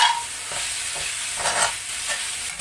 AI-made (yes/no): no